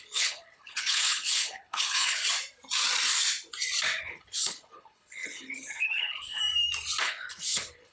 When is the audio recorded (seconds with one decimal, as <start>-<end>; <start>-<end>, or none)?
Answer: 2.2-4.0; 6.4-7.0